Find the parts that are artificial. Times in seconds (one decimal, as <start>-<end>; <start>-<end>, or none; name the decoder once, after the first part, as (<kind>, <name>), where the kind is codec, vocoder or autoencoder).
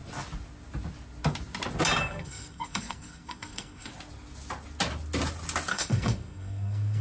2.0-3.9 (codec, SNAC); 5.7-7.0